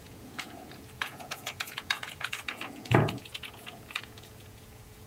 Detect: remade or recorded remade